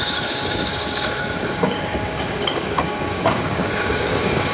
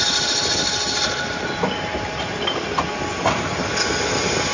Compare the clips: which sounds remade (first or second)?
first